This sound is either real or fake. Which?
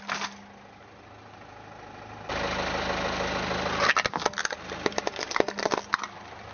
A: real